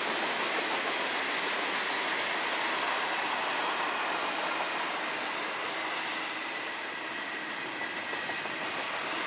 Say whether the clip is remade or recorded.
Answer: recorded